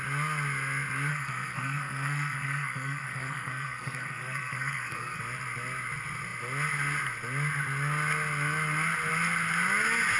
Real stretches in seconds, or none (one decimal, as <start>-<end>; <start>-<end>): 0.0-1.1; 5.2-10.2